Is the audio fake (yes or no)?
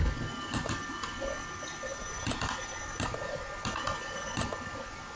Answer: no